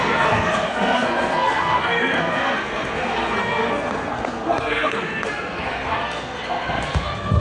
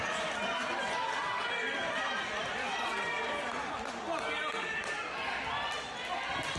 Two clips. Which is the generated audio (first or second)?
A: first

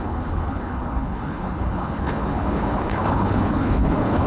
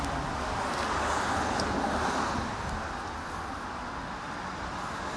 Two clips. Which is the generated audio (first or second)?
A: first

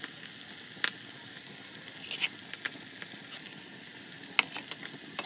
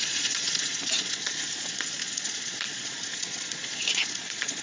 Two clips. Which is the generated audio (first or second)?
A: second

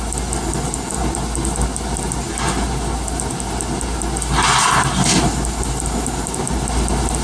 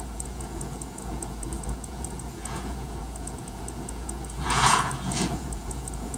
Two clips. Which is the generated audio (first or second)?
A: second